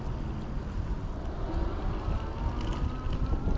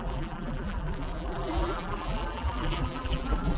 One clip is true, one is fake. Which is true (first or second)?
first